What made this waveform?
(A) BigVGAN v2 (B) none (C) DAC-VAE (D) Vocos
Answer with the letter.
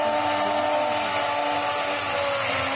B